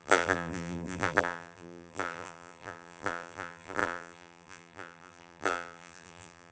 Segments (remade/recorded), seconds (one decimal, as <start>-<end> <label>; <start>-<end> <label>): 0.0-6.5 remade